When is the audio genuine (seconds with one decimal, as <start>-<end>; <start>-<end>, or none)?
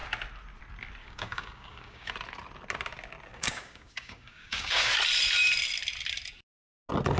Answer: 0.0-1.0; 2.1-3.3; 4.9-7.2